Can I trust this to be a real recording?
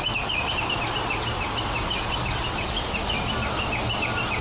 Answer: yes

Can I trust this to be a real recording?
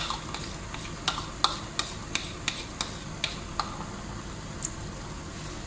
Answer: yes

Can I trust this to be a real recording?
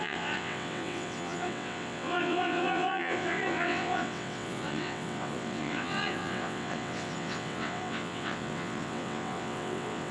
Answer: no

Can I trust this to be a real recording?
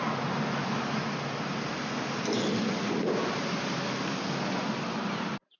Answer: yes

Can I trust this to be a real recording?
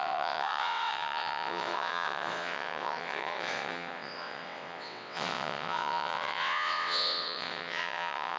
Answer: no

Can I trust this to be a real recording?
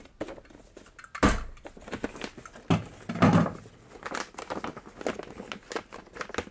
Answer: yes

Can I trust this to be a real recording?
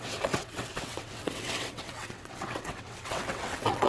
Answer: no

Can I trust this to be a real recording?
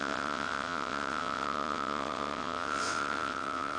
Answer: no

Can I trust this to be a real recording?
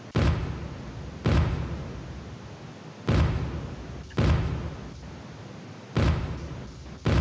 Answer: yes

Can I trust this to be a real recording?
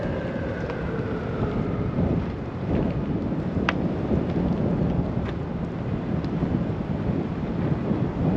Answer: yes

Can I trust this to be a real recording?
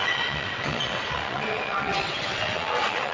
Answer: no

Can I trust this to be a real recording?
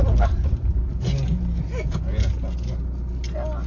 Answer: yes